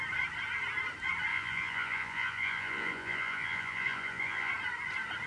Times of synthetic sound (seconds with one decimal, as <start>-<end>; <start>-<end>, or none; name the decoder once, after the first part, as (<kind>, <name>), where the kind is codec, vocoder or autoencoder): 1.3-4.5 (vocoder, Vocos)